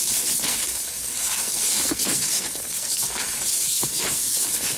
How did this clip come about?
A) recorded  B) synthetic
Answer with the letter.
B